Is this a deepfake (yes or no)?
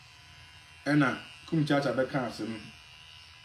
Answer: no